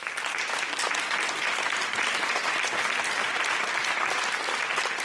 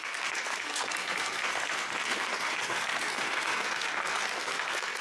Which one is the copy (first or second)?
second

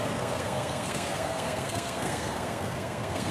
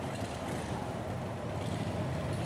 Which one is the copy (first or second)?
first